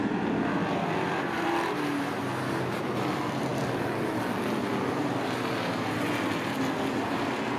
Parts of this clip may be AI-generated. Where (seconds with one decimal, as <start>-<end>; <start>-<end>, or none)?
none